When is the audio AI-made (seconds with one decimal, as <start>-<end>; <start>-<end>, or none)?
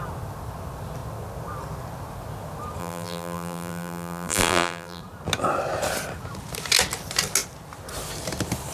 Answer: 2.8-5.0